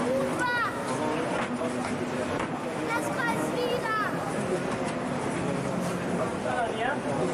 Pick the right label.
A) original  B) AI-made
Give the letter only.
A